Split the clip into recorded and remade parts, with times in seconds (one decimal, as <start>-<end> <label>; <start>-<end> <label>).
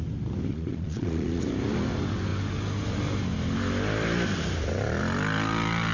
0.0-0.5 recorded; 0.5-1.4 remade; 1.4-5.9 recorded